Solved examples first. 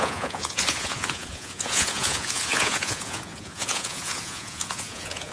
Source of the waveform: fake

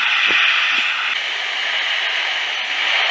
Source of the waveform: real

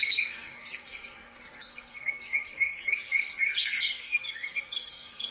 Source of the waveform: fake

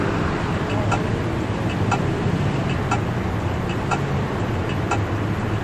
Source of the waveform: real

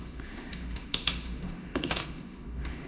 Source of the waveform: fake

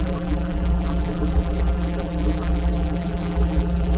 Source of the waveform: fake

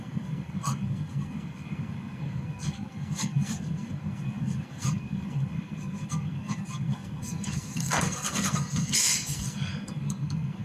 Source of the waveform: fake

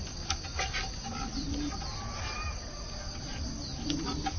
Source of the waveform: real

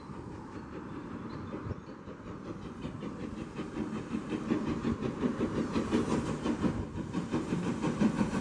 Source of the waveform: fake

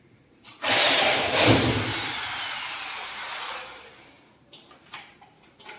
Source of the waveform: fake